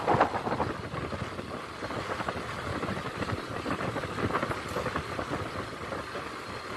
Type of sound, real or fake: real